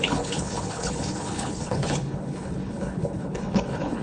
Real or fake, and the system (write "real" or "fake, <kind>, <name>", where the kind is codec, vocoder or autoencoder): fake, codec, HILCodec